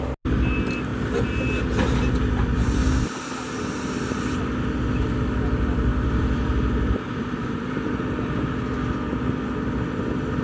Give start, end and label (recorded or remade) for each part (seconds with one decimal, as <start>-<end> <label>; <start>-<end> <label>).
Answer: 0.0-5.9 recorded; 5.9-7.7 remade; 7.7-10.4 recorded